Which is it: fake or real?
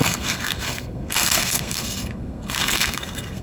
fake